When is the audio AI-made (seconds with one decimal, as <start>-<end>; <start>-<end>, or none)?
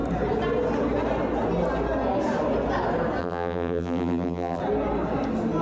3.2-4.6